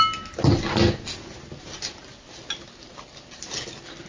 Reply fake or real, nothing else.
real